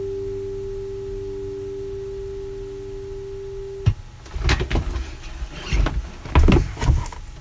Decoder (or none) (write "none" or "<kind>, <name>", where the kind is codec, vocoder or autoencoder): none